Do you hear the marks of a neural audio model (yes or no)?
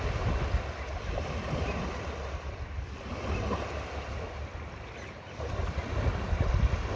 no